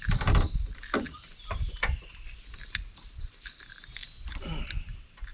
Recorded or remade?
remade